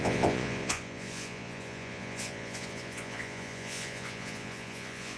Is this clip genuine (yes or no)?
no